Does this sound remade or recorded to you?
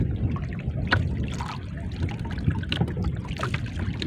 recorded